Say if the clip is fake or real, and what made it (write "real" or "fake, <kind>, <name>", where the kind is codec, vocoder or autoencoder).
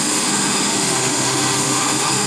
fake, autoencoder, DAC-VAE